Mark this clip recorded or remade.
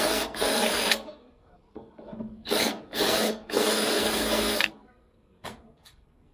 remade